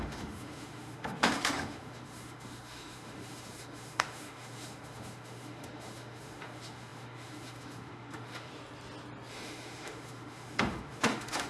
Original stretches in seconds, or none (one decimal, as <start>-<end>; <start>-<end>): 8.5-9.3